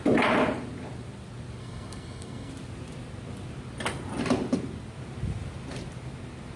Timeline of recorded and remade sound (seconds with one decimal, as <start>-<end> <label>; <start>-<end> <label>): 0.0-1.6 recorded; 1.6-2.5 remade; 2.5-6.6 recorded